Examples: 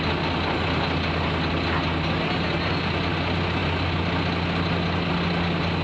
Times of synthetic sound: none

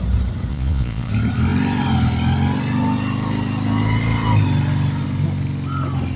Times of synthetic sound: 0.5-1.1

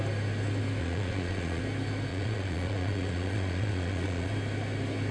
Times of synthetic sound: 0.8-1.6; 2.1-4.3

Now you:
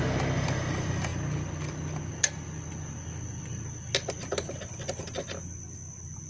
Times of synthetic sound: none

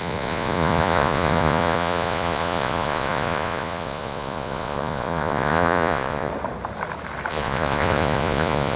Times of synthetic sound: 0.0-6.3; 7.3-8.8

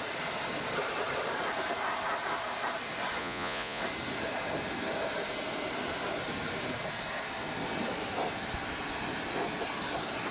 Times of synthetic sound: 3.2-3.8

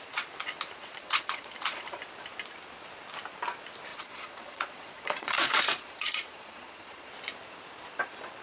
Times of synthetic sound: 0.8-2.0; 3.9-7.1

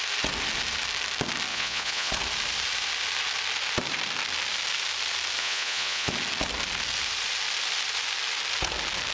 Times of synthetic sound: 1.5-2.1; 5.4-6.1